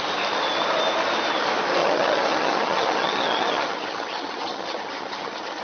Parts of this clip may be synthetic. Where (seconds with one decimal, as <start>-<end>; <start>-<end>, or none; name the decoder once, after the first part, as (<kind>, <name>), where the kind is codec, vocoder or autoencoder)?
1.8-5.6 (vocoder, HiFi-GAN)